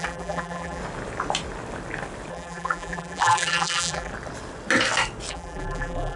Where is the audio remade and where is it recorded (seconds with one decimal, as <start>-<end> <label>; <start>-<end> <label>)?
0.0-0.8 remade; 0.8-2.3 recorded; 2.3-4.1 remade; 4.1-5.3 recorded; 5.3-6.2 remade